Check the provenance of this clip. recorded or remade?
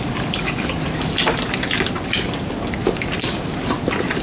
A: recorded